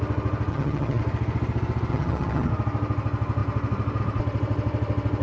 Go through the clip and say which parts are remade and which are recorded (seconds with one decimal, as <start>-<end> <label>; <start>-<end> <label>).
0.0-0.5 recorded; 0.5-1.0 remade; 1.0-1.9 recorded; 1.9-2.5 remade; 2.5-5.2 recorded